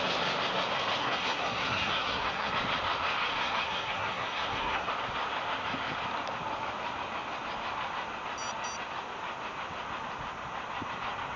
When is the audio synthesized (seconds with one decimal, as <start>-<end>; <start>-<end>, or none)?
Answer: 1.0-2.5; 3.3-4.9